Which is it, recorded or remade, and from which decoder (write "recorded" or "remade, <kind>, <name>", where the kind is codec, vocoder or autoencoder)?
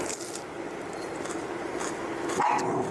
recorded